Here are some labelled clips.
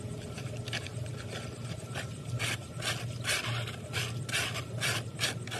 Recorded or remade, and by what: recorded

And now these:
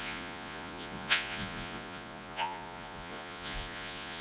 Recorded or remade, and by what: remade, vocoder, Vocos